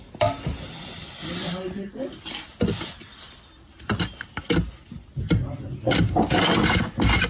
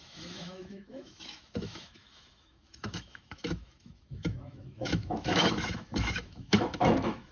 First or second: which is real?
first